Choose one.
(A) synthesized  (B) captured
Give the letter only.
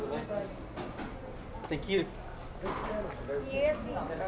B